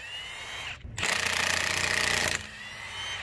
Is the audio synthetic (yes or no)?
no